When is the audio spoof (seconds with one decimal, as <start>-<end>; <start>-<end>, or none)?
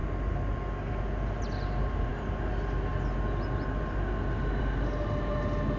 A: none